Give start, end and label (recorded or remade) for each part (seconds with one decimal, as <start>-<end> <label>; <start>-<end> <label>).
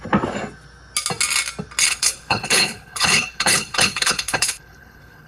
0.0-1.8 recorded; 1.8-5.3 remade